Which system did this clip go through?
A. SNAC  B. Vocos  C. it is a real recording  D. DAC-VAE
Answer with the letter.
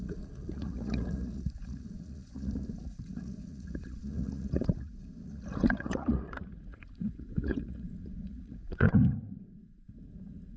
B